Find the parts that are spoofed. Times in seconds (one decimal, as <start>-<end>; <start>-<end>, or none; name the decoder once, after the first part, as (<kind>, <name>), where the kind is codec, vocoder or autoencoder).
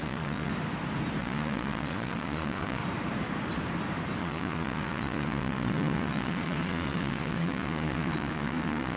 0.0-0.5 (vocoder, Vocos); 1.2-2.8; 4.2-9.0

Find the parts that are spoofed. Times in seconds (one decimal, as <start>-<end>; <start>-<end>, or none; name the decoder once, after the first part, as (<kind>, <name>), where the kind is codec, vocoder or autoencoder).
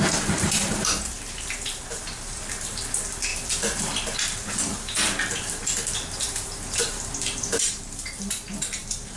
0.0-3.3 (vocoder, BigVGAN v2); 4.2-9.2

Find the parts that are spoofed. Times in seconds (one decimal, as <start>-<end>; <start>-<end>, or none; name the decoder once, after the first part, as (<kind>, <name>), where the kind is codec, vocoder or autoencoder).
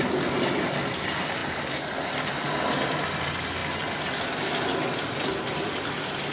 none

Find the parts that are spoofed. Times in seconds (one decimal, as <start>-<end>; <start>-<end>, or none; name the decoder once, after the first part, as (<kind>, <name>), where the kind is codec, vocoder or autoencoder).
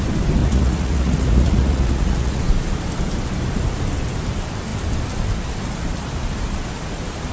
0.4-2.4 (vocoder, Vocos)